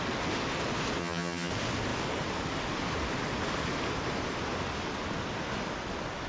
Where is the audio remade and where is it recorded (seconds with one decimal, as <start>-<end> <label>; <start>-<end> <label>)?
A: 0.0-1.0 recorded; 1.0-1.5 remade; 1.5-6.3 recorded